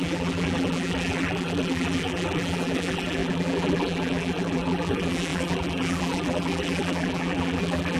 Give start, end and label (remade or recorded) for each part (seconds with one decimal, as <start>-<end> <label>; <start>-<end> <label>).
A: 0.0-8.0 remade